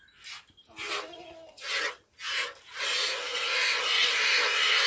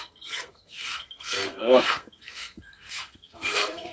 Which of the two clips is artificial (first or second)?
second